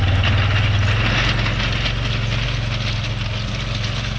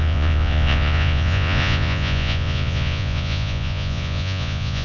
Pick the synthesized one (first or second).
second